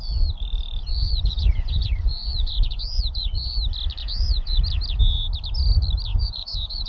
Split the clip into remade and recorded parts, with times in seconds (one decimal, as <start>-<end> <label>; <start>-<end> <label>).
0.0-0.9 recorded; 0.9-3.5 remade; 3.5-4.0 recorded; 4.0-4.6 remade; 4.6-6.1 recorded; 6.1-6.9 remade